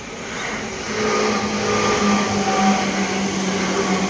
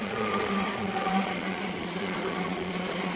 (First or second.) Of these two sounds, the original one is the first